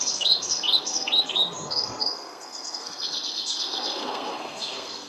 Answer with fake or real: fake